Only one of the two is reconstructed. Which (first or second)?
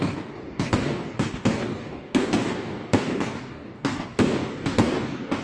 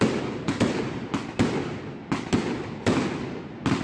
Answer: first